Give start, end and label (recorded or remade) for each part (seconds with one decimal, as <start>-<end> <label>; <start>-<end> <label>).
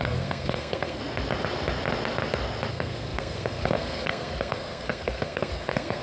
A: 0.0-1.0 remade; 1.0-2.7 recorded; 2.7-6.0 remade